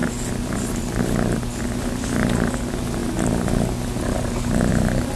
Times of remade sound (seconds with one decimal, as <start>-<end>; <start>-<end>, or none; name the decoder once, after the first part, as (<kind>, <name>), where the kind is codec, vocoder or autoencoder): none